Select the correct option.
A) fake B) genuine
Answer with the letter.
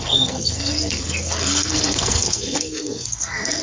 A